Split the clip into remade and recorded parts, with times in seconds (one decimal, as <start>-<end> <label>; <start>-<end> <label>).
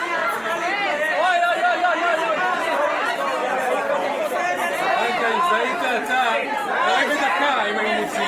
0.0-8.3 recorded